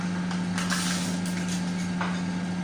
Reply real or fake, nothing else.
real